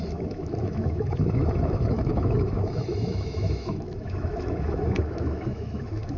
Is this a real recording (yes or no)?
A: no